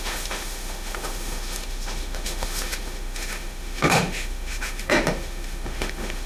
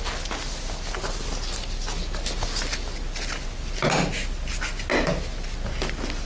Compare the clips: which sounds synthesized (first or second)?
first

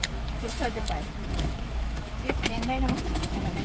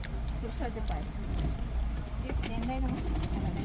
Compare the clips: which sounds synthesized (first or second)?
first